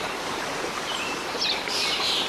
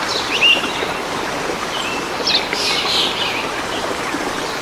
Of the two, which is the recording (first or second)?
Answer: second